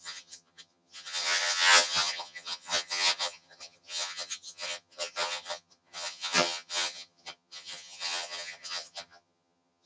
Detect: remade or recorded remade